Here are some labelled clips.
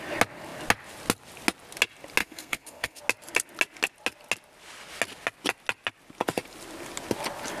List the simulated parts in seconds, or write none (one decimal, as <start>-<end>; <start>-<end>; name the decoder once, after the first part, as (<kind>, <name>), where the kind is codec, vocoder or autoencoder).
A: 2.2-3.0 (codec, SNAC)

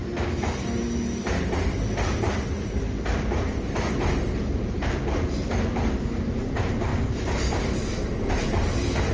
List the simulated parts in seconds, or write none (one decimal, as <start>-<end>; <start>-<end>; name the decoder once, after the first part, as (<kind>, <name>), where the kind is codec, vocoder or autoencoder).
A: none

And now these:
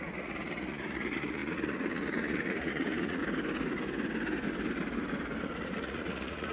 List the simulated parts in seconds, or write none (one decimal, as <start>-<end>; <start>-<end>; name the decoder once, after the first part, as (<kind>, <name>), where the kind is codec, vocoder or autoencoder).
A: 0.0-3.2 (vocoder, Vocos); 5.4-6.5